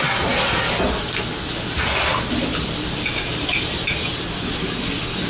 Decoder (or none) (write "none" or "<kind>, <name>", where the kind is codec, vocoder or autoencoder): none